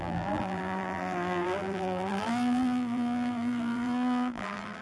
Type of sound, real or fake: fake